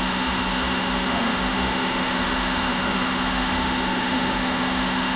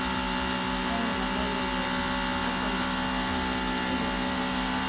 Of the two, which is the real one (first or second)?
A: second